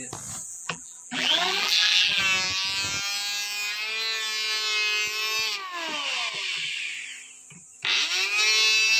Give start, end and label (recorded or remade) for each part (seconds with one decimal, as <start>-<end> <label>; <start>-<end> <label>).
0.0-0.5 recorded; 0.5-2.2 remade; 2.2-9.0 recorded